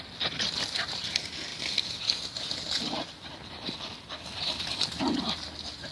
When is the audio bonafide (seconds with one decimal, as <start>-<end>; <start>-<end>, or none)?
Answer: 0.0-5.9